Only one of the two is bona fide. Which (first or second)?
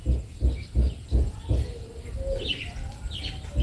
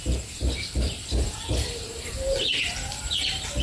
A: first